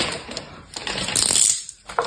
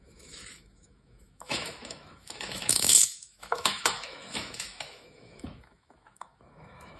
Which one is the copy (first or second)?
second